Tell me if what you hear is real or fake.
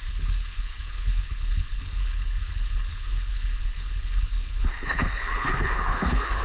fake